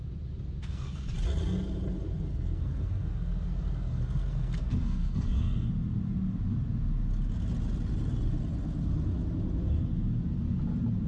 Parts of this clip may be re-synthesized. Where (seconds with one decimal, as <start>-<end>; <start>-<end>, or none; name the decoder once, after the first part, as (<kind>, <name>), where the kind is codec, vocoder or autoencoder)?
0.6-1.1 (codec, SNAC); 2.3-5.7